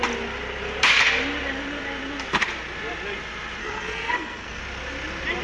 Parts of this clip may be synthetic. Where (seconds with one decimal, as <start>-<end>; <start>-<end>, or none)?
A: 3.6-4.6